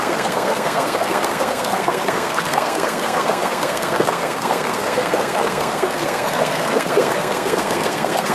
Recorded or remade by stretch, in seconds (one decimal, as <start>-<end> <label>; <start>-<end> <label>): 0.0-8.3 remade